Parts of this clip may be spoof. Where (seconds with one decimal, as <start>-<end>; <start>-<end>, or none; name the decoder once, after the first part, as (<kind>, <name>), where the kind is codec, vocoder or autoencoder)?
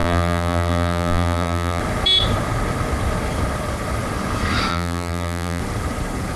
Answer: 0.0-1.8 (vocoder, BigVGAN v2); 4.7-5.6